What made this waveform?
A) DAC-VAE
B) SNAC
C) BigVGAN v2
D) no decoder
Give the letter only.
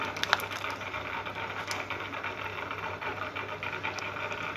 D